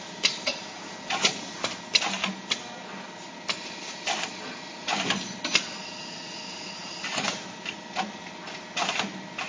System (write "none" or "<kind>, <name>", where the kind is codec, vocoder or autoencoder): none